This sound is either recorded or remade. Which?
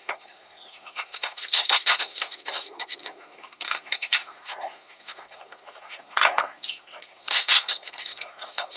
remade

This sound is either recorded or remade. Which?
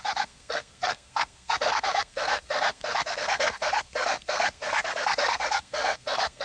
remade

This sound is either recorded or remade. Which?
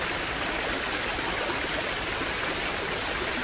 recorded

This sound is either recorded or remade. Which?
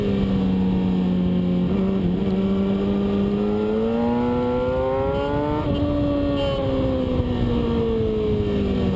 recorded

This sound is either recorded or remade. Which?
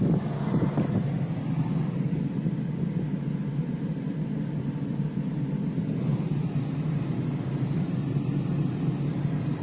recorded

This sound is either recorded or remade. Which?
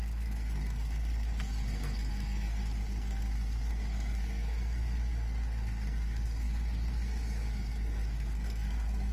remade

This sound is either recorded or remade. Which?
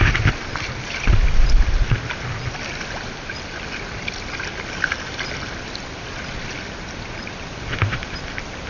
recorded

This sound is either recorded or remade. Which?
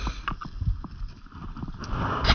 recorded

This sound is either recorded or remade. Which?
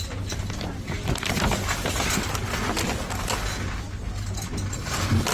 recorded